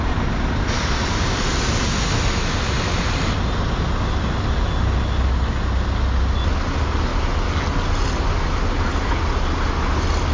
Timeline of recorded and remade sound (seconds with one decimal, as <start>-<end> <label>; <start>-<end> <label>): 0.0-10.3 recorded